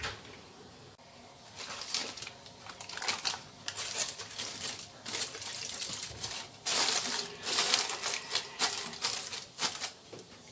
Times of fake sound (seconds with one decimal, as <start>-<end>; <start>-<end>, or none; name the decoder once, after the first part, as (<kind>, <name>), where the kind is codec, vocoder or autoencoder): 0.0-10.5 (vocoder, BigVGAN v2)